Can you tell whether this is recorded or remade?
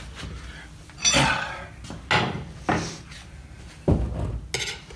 recorded